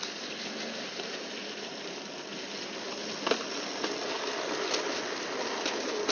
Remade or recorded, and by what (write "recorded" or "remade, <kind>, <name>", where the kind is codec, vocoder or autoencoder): recorded